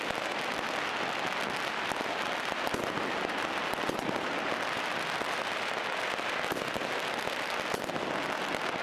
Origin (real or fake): real